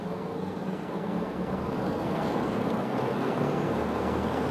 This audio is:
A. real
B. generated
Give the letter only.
B